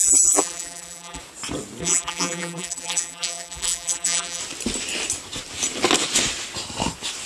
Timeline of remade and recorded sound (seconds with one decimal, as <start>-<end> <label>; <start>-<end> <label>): 0.0-1.2 remade; 1.2-1.8 recorded; 1.8-4.4 remade; 4.4-7.3 recorded